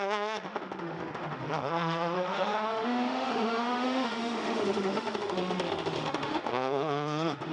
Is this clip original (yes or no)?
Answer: no